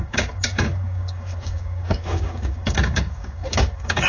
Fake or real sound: fake